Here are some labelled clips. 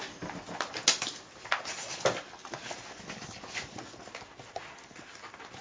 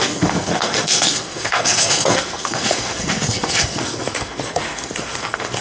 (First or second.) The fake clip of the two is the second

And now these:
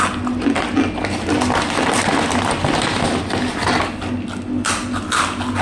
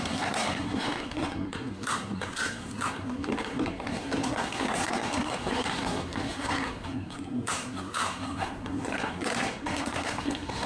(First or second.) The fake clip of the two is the second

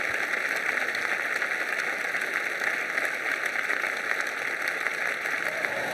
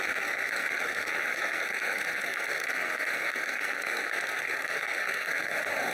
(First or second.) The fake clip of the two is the second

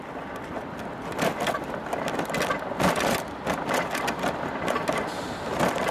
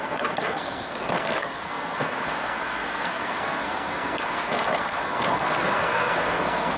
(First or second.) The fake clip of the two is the second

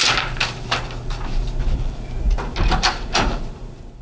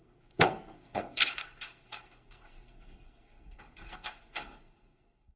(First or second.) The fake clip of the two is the second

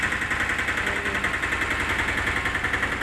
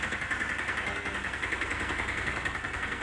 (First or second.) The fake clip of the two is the second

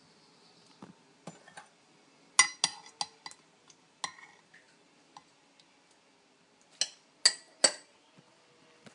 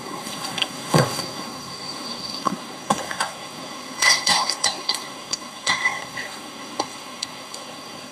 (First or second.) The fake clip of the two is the second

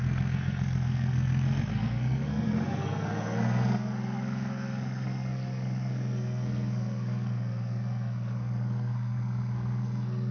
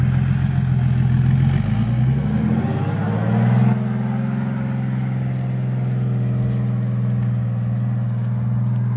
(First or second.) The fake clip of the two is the first